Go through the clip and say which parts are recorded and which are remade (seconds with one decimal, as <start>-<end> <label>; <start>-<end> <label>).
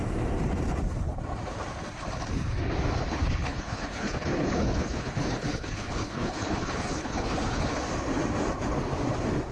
0.0-3.0 recorded; 3.0-7.8 remade; 7.8-9.5 recorded